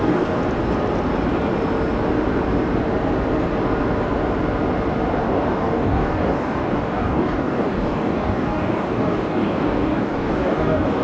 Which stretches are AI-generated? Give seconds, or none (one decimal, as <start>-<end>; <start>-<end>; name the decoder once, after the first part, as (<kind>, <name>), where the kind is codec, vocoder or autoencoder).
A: 0.0-0.4 (codec, DAC); 5.2-11.0